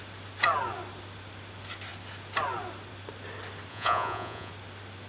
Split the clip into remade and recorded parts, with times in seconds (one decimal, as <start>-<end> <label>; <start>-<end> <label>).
0.0-3.7 recorded; 3.7-4.5 remade; 4.5-5.1 recorded